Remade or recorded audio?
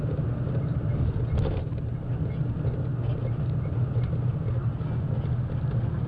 recorded